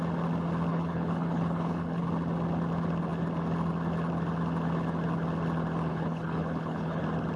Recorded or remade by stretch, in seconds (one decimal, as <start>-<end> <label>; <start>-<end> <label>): 0.0-0.7 recorded; 0.7-2.0 remade; 2.0-5.9 recorded; 5.9-7.0 remade; 7.0-7.4 recorded